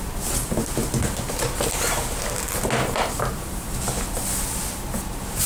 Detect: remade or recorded recorded